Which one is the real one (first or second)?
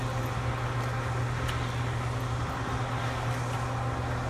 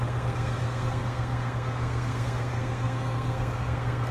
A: first